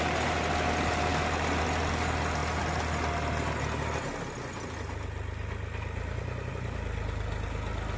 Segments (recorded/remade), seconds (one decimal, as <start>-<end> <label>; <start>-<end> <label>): 0.0-8.0 recorded